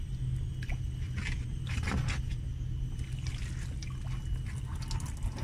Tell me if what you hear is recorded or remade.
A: recorded